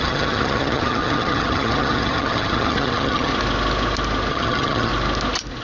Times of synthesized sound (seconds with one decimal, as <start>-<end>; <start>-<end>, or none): 0.0-3.3; 4.3-4.9